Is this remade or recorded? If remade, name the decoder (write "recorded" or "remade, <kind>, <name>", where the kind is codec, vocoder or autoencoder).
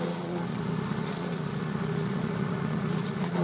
remade, vocoder, Vocos